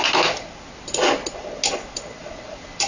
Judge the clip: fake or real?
real